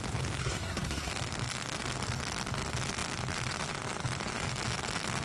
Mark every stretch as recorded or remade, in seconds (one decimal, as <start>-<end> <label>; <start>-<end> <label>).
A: 0.0-0.4 recorded; 0.4-1.1 remade; 1.1-5.2 recorded